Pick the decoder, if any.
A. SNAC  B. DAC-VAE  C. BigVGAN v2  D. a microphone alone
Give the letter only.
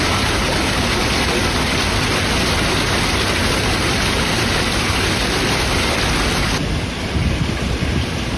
D